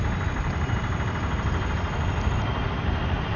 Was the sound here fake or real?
real